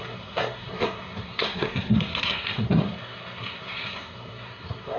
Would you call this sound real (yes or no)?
no